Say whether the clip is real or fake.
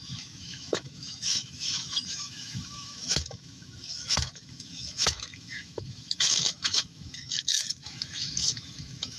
fake